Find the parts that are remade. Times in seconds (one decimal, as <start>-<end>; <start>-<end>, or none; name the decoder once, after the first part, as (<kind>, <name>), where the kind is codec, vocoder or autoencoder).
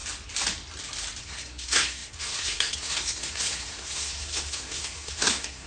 1.2-5.7 (codec, SNAC)